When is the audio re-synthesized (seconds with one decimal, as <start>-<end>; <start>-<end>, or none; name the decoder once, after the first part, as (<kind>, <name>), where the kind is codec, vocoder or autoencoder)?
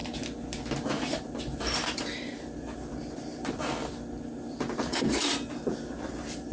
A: 1.0-6.5 (vocoder, BigVGAN v2)